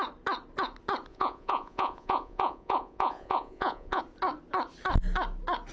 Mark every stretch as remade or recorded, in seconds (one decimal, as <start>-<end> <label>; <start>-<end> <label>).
0.0-1.1 recorded; 1.1-4.0 remade; 4.0-5.7 recorded